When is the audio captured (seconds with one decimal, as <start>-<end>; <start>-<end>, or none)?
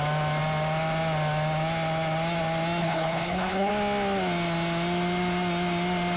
0.0-2.8; 3.7-6.2